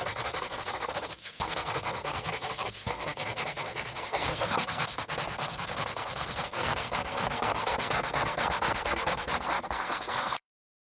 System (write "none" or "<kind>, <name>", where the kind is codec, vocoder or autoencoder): codec, SNAC